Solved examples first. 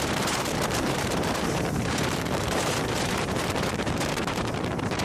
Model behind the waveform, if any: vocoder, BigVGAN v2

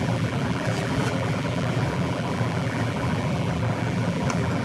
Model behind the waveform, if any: vocoder, BigVGAN v2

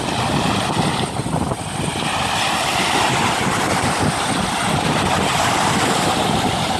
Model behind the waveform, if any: vocoder, BigVGAN v2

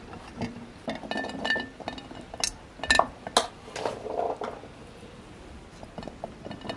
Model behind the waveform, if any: none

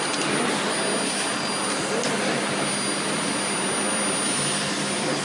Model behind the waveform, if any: none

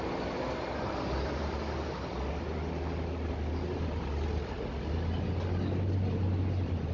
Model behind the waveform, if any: none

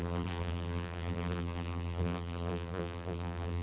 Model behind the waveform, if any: vocoder, BigVGAN v2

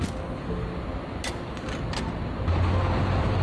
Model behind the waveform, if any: none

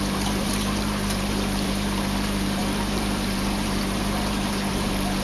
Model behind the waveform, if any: vocoder, BigVGAN v2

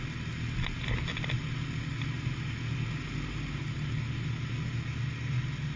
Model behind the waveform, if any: none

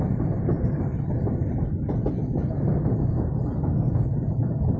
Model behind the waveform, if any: none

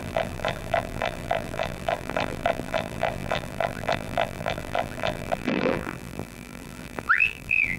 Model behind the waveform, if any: vocoder, BigVGAN v2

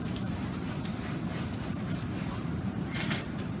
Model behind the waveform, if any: vocoder, BigVGAN v2